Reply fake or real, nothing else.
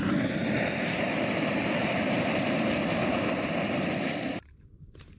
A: fake